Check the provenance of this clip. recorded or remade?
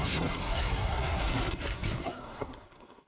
remade